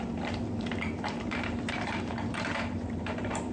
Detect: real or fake fake